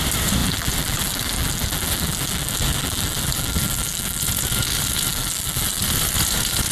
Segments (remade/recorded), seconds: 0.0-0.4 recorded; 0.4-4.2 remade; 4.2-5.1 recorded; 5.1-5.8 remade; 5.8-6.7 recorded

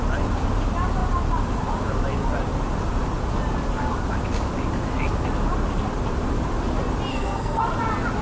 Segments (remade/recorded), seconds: 0.0-7.1 recorded; 7.1-7.6 remade; 7.6-8.2 recorded

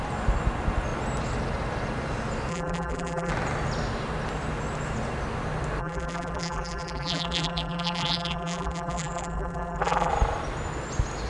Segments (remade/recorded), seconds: 0.0-2.5 recorded; 2.5-3.3 remade; 3.3-5.8 recorded; 5.8-10.1 remade; 10.1-11.3 recorded

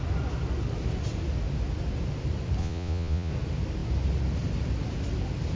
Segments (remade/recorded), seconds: 0.0-2.6 recorded; 2.6-3.3 remade; 3.3-5.6 recorded

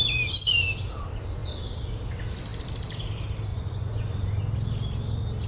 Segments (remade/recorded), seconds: 0.0-3.5 recorded; 3.5-4.4 remade; 4.4-5.5 recorded

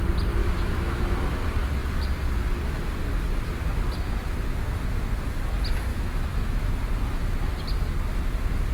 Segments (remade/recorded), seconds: 0.0-0.4 recorded; 0.4-1.0 remade; 1.0-5.9 recorded; 5.9-6.7 remade; 6.7-8.7 recorded

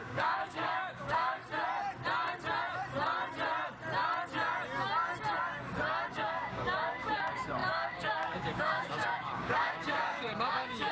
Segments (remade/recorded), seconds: 0.0-1.4 remade; 1.4-6.1 recorded; 6.1-10.9 remade